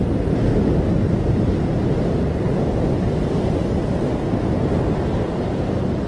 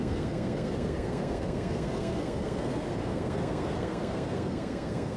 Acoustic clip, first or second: first